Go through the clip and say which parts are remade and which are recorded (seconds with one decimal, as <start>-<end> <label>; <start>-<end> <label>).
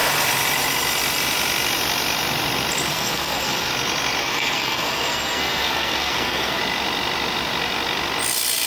0.0-2.9 recorded; 2.9-3.7 remade; 3.7-4.2 recorded; 4.2-6.6 remade; 6.6-8.7 recorded